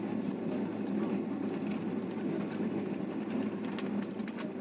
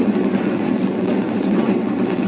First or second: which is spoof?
second